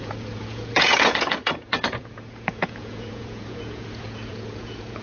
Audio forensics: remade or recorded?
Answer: remade